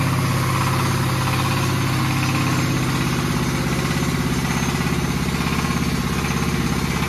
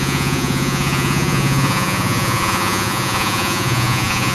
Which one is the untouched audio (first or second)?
first